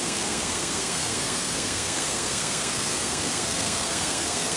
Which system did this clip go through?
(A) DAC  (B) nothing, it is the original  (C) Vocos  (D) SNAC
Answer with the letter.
D